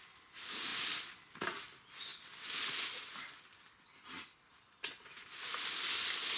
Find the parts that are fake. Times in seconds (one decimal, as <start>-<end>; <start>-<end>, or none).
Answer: none